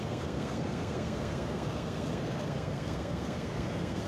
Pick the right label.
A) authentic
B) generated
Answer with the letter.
B